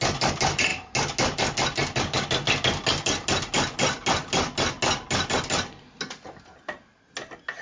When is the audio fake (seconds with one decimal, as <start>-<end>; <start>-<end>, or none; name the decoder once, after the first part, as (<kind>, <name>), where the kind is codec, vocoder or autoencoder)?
none